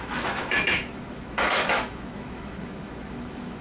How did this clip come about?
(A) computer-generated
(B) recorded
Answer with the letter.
A